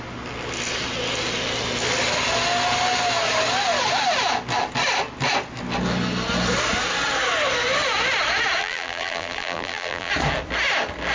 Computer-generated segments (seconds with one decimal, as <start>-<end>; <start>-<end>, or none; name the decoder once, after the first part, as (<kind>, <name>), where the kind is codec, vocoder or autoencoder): 8.6-10.1 (vocoder, BigVGAN v2)